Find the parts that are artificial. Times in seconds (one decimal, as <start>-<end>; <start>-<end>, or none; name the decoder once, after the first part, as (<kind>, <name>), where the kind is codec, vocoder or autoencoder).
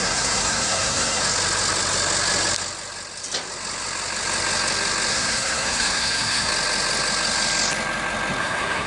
0.0-1.2 (codec, SNAC); 5.1-6.5; 8.4-8.9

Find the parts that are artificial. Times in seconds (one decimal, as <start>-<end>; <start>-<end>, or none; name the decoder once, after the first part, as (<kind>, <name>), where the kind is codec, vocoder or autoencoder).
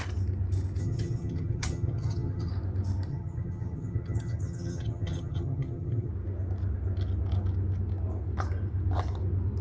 0.8-2.5 (vocoder, HiFi-GAN); 3.1-6.1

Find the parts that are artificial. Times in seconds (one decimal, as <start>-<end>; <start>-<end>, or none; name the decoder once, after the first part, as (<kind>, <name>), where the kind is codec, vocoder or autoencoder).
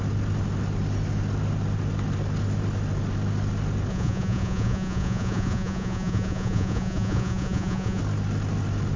3.9-8.0 (vocoder, Vocos)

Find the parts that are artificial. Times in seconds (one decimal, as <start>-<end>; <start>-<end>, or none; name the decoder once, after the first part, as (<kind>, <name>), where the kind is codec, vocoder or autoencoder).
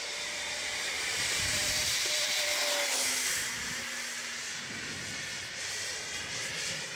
0.0-2.5 (vocoder, BigVGAN v2); 5.6-7.0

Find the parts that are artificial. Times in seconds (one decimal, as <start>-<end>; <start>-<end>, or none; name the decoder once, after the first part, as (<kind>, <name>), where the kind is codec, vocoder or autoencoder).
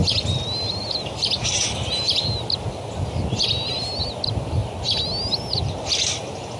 none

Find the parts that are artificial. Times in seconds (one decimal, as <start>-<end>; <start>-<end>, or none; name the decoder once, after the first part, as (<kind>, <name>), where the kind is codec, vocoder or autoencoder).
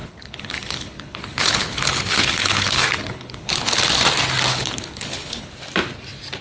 0.0-3.8 (codec, HILCodec); 4.5-5.5